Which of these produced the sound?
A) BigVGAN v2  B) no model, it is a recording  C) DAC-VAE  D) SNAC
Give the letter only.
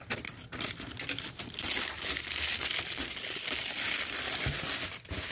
B